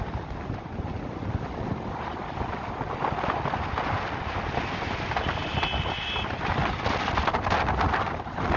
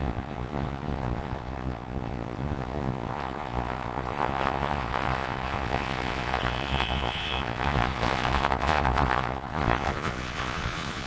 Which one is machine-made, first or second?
second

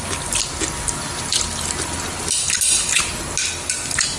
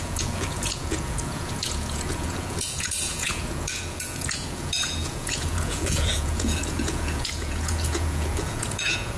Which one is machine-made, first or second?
second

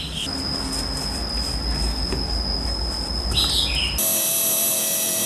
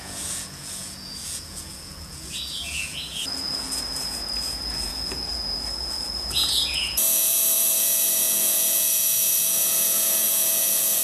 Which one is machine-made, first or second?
second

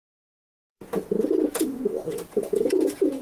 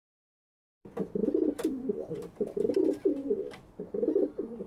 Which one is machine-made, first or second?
first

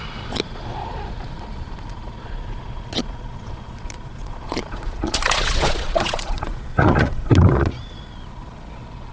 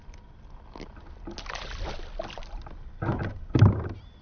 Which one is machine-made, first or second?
first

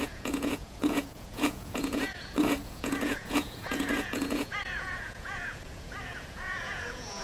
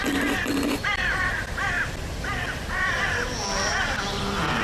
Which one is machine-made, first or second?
first